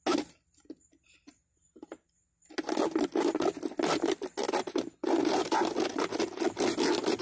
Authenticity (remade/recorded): recorded